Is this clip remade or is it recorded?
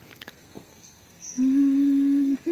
remade